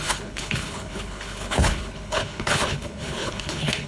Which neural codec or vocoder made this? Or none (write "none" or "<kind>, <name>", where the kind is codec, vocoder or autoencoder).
codec, HILCodec